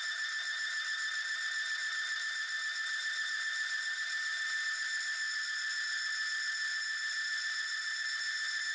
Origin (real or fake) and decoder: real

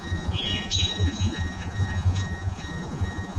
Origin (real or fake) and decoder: fake, vocoder, Vocos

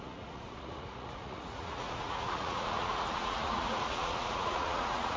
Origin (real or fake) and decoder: fake, vocoder, Vocos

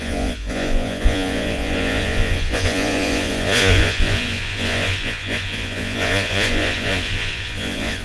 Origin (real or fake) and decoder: fake, vocoder, Vocos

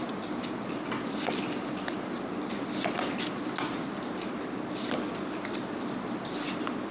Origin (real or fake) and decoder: real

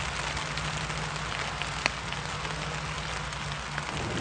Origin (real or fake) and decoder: real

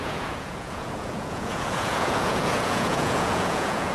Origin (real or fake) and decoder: fake, vocoder, Vocos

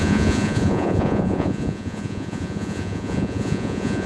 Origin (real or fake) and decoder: fake, vocoder, Vocos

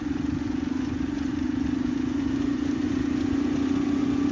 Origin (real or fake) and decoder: fake, vocoder, Vocos